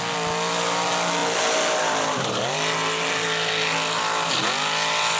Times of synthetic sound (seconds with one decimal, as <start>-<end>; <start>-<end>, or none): none